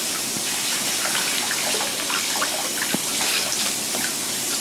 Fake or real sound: real